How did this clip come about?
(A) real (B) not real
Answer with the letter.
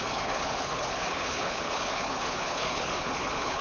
B